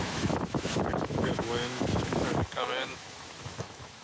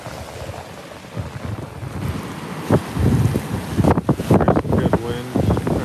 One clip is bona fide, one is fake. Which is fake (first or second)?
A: first